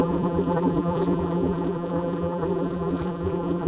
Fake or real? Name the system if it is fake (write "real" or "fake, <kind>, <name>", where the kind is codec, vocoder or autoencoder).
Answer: fake, vocoder, BigVGAN v2